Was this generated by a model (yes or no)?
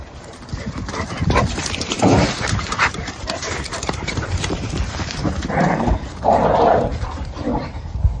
yes